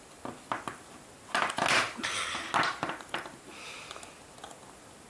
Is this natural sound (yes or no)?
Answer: yes